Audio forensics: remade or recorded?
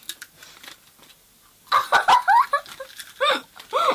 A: recorded